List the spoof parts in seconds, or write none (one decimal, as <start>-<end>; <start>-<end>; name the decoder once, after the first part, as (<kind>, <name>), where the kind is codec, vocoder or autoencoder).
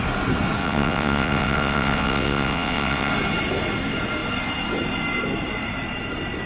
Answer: 0.6-3.1 (vocoder, WaveNeXt)